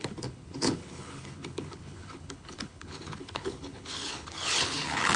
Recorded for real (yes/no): no